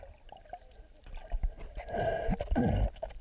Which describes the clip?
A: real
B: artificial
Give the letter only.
A